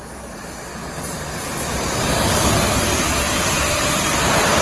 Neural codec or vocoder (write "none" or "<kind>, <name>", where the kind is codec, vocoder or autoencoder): none